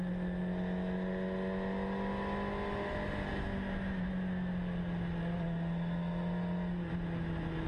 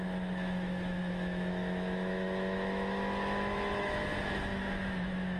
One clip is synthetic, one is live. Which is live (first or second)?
first